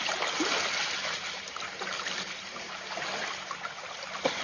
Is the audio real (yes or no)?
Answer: yes